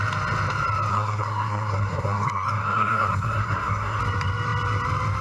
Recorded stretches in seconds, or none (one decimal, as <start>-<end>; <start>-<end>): 0.0-0.9; 4.0-5.2